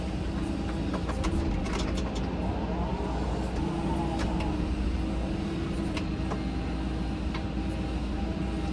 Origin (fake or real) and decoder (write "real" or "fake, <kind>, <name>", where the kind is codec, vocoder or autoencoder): real